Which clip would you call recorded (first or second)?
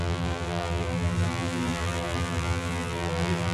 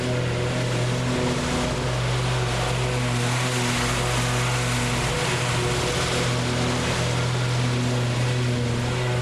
second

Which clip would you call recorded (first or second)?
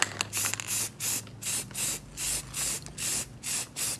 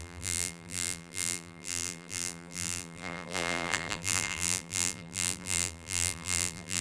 first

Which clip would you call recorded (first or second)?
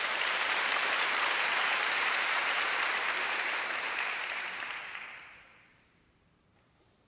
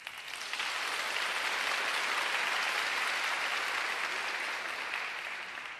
second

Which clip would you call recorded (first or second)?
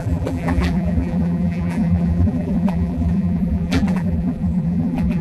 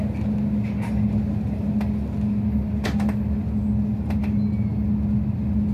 second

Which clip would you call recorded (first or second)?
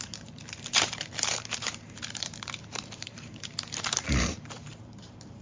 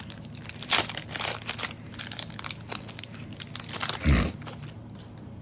second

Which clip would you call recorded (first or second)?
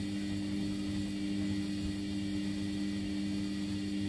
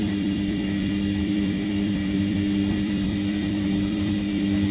first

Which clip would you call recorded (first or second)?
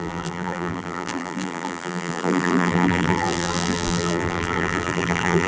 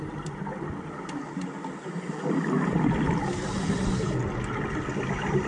second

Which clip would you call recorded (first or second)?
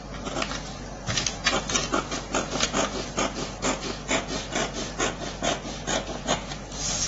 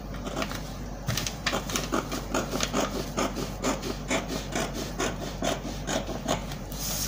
first